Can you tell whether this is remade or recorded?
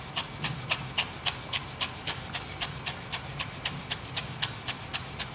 recorded